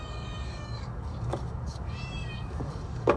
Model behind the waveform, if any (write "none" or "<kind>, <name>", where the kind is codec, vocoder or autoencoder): codec, DAC